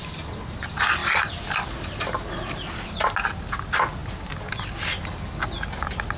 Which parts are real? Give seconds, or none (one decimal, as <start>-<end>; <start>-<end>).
0.0-6.2

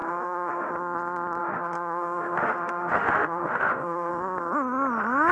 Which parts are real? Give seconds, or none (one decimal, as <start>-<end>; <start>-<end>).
0.7-1.4; 4.1-5.3